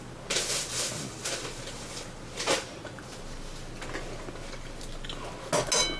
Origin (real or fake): real